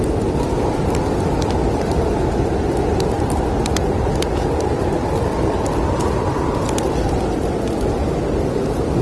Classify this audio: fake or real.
real